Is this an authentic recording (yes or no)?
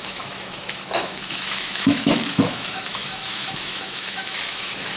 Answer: no